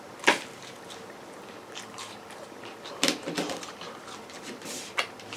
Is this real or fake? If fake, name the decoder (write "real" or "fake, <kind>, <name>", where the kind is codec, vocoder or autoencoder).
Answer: fake, vocoder, BigVGAN v2